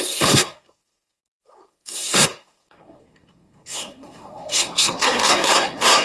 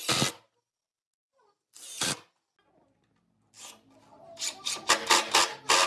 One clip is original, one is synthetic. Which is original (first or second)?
second